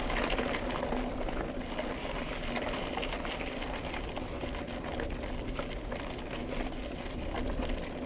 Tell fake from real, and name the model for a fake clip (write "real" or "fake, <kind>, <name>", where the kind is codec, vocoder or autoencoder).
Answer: real